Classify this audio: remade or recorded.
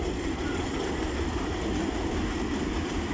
recorded